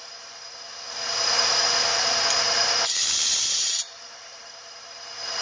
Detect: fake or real fake